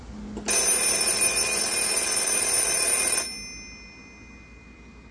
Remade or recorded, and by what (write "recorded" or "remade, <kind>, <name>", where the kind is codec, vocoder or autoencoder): recorded